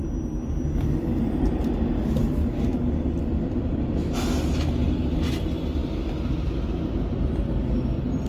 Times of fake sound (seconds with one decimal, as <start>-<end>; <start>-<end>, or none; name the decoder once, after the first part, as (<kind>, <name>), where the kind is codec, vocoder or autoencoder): none